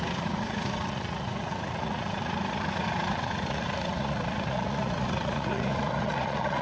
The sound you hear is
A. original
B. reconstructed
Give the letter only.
B